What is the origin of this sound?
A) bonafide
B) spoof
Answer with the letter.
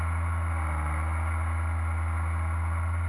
A